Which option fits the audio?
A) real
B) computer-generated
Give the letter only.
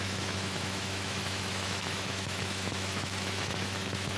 B